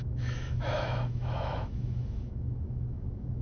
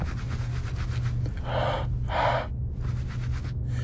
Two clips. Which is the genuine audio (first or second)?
second